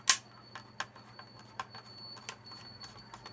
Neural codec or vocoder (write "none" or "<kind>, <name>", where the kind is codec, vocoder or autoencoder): none